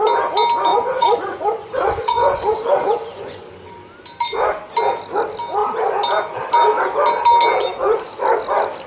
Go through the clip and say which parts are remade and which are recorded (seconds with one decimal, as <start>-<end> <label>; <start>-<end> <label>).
0.0-0.7 recorded; 0.7-3.5 remade; 3.5-8.9 recorded